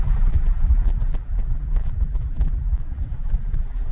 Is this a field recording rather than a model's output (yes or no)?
no